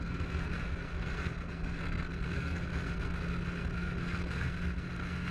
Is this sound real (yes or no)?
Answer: no